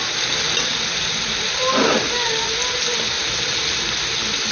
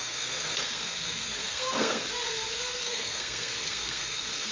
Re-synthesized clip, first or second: second